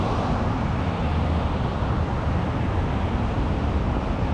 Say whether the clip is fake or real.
real